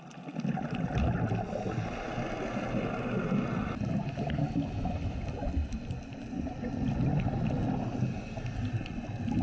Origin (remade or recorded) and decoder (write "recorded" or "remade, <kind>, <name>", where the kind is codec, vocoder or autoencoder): recorded